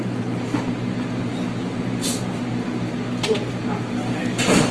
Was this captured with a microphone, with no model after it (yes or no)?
yes